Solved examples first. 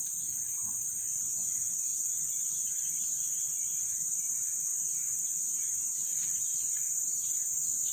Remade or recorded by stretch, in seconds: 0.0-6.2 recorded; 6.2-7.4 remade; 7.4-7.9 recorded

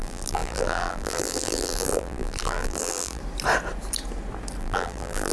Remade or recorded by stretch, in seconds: 0.0-3.2 remade; 3.2-4.6 recorded; 4.6-5.3 remade

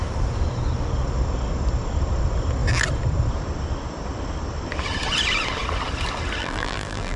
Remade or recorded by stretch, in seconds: 0.0-6.4 recorded; 6.4-7.2 remade

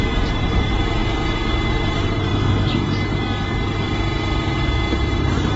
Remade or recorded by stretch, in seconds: 0.0-1.0 remade; 1.0-1.7 recorded; 1.7-2.3 remade; 2.3-5.0 recorded; 5.0-5.6 remade

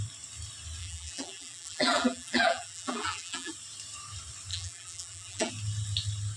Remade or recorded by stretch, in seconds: 0.0-0.8 recorded; 0.8-3.5 remade; 3.5-4.5 recorded; 4.5-5.5 remade; 5.5-6.4 recorded